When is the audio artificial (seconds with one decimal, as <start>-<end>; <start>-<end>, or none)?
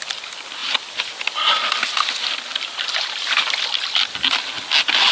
none